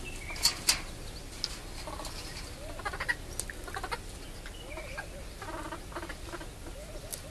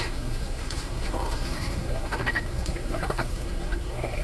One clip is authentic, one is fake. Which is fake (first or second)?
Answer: second